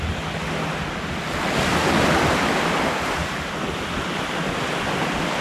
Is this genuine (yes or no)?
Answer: yes